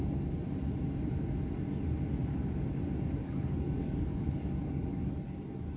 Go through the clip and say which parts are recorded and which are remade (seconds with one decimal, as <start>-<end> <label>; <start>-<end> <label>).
0.0-3.2 recorded; 3.2-5.1 remade; 5.1-5.8 recorded